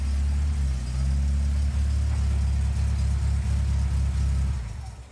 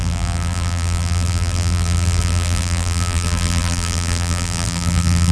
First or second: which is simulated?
second